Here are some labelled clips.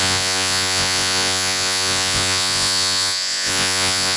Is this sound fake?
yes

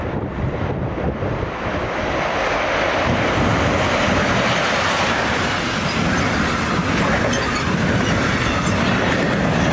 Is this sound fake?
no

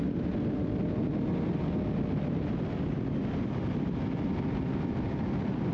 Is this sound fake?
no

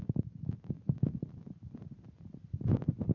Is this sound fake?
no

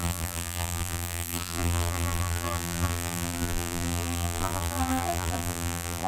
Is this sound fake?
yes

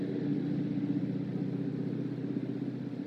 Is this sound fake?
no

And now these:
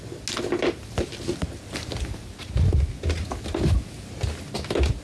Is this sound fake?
no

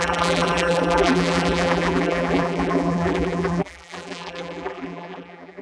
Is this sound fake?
yes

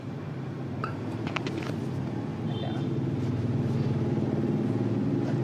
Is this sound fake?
no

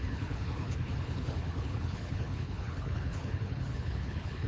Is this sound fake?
yes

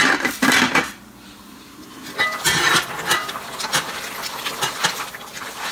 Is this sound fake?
no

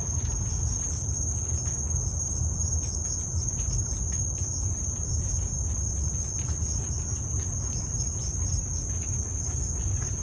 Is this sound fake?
no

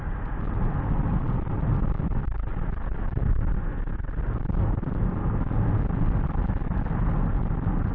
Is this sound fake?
no